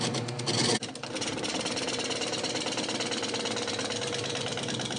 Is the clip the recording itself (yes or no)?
yes